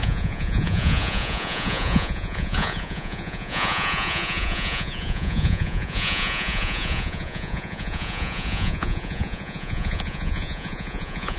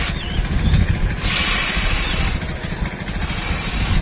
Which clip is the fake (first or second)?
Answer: first